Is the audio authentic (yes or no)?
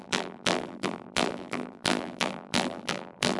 no